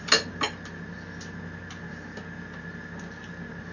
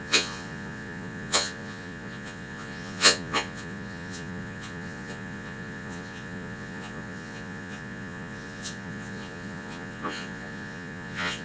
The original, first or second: first